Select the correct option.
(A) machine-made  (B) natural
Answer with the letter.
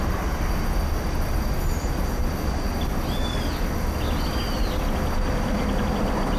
B